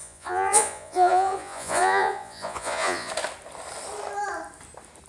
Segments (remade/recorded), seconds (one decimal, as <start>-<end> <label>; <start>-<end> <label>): 0.0-3.1 remade; 3.1-5.1 recorded